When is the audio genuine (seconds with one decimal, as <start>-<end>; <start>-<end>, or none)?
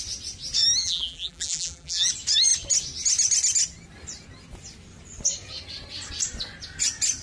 0.0-0.8; 2.1-7.2